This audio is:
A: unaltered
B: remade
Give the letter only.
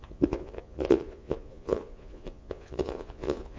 B